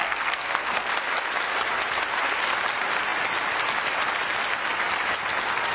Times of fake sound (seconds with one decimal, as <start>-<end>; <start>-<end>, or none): 0.0-0.9

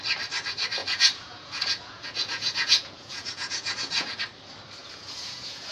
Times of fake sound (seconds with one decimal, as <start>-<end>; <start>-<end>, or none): 0.8-4.2; 4.8-5.7